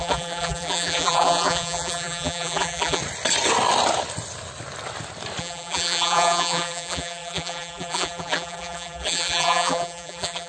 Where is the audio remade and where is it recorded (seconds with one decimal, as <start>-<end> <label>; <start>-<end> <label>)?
0.0-3.0 remade; 3.0-5.4 recorded; 5.4-10.5 remade